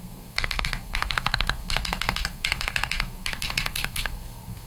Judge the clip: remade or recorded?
remade